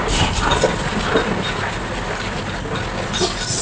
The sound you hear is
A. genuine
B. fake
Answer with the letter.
A